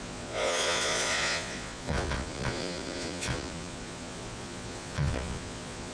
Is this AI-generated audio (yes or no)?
yes